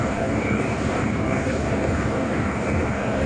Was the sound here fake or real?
fake